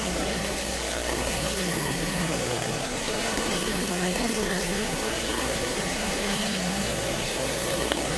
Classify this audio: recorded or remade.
remade